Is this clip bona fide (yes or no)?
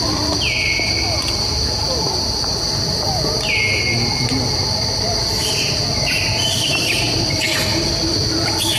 yes